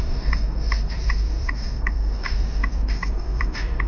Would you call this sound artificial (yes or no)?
yes